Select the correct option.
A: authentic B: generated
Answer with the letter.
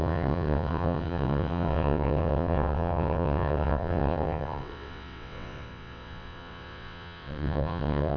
B